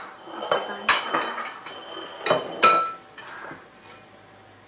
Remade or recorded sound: recorded